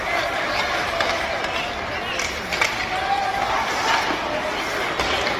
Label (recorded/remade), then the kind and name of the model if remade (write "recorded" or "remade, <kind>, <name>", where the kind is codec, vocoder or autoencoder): recorded